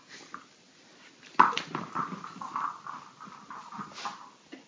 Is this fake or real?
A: real